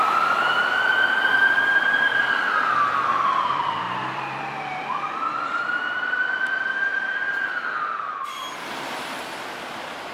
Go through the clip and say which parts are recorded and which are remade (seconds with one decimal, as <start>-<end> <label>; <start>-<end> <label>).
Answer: 0.0-0.6 remade; 0.6-1.3 recorded; 1.3-2.1 remade; 2.1-3.4 recorded; 3.4-6.2 remade; 6.2-6.8 recorded; 6.8-10.1 remade